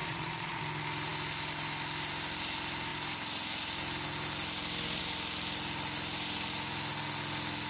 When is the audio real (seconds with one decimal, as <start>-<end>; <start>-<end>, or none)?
0.6-7.7